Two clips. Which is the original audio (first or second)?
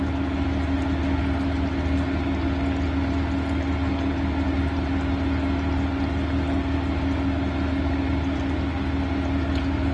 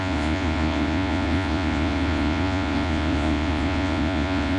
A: first